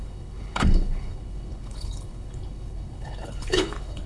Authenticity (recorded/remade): remade